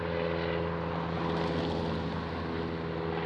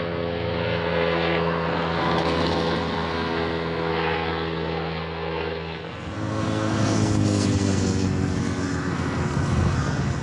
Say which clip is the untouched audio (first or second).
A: first